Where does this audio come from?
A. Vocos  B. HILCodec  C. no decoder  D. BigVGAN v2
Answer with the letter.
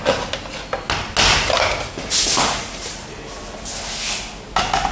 C